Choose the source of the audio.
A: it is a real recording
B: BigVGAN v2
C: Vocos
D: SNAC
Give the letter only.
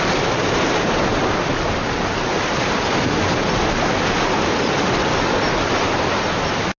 A